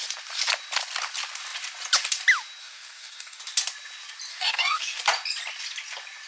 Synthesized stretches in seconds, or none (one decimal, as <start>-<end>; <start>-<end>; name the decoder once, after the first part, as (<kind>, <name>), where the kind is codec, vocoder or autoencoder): 2.6-3.4 (codec, DAC); 4.3-5.0